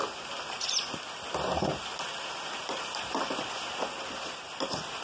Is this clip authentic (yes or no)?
yes